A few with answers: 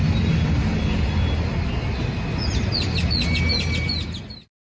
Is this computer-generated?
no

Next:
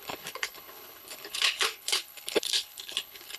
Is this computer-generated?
yes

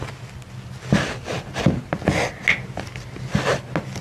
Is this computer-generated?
no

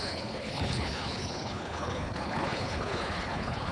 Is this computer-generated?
yes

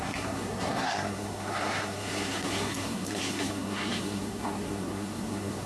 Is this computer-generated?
yes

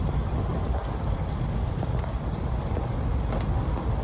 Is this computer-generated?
no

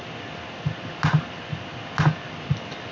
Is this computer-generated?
no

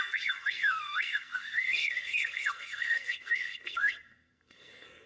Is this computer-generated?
yes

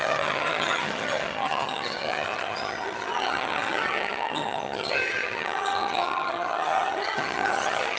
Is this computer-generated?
yes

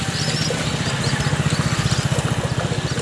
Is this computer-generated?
no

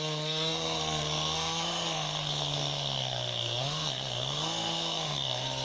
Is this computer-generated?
yes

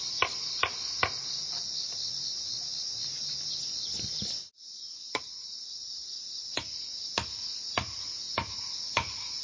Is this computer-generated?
no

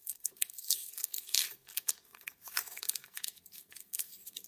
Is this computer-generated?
yes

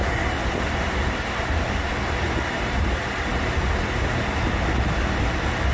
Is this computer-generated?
no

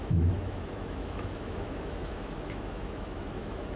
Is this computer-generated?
yes